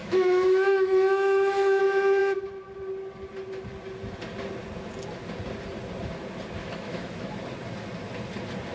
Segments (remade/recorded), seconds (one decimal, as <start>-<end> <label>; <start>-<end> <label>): 0.0-1.8 remade; 1.8-6.6 recorded; 6.6-7.3 remade; 7.3-8.7 recorded

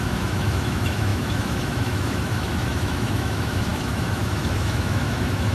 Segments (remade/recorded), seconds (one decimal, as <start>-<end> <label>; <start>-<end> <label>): 0.0-5.5 remade

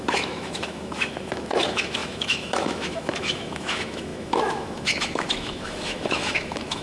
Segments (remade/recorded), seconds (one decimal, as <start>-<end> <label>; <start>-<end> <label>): 0.0-6.8 remade

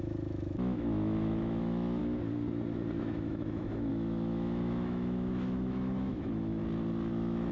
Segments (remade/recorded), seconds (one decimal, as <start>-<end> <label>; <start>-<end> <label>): 0.0-2.0 remade; 2.0-3.0 recorded; 3.0-6.6 remade; 6.6-7.1 recorded; 7.1-7.5 remade